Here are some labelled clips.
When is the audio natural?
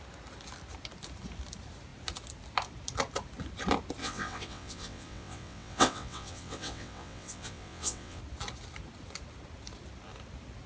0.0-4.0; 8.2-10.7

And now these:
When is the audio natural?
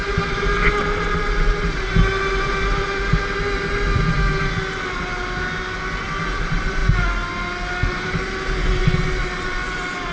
0.0-10.1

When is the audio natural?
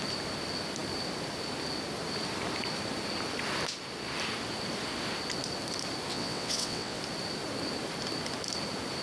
0.0-6.1; 7.0-9.0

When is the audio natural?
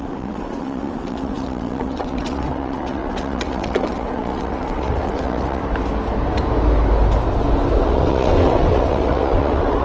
5.6-7.8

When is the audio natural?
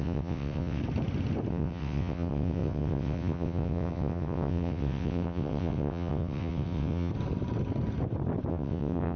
0.8-1.5; 7.1-8.5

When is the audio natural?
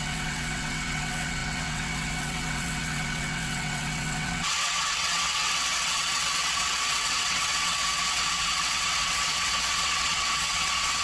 none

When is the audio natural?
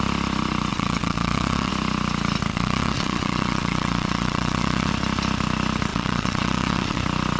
0.0-0.7; 1.7-2.5; 4.9-5.9; 7.0-7.4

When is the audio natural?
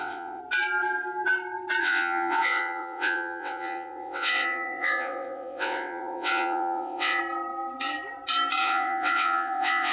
0.4-1.8; 7.2-8.6